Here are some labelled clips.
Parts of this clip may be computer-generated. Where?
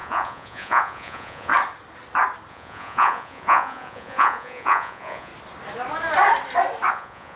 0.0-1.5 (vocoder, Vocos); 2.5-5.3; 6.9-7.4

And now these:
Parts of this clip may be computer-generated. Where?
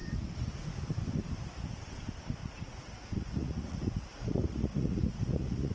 2.4-5.7 (vocoder, Vocos)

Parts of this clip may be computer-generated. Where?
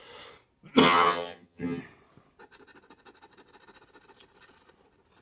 0.8-1.8 (vocoder, HiFi-GAN)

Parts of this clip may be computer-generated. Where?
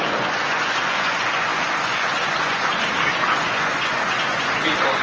0.0-2.7 (vocoder, Vocos); 3.4-5.0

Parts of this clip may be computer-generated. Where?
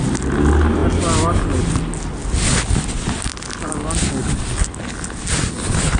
none